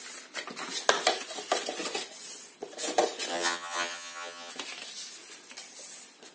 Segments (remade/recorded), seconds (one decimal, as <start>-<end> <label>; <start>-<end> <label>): 0.0-3.3 recorded; 3.3-4.5 remade; 4.5-6.3 recorded